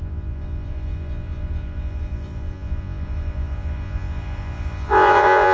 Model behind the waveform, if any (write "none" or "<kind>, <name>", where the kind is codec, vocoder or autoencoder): vocoder, Vocos